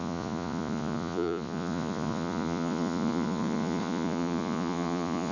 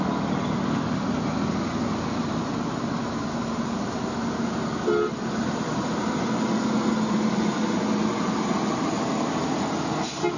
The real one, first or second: second